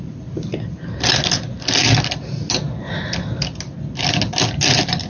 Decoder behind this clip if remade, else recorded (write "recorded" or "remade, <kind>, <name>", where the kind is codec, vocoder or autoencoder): recorded